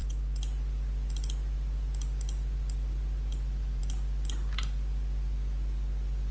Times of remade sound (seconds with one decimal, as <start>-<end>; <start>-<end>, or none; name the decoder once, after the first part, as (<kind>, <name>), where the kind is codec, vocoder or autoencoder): none